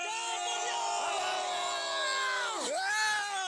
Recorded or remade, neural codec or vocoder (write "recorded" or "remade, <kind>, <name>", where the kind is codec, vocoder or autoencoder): recorded